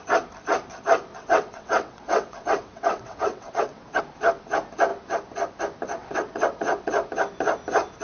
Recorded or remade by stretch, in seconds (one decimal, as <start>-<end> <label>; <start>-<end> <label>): 0.0-1.1 recorded; 1.1-4.0 remade; 4.0-6.0 recorded; 6.0-7.1 remade; 7.1-8.0 recorded